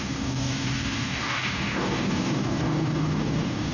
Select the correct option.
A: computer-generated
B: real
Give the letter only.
A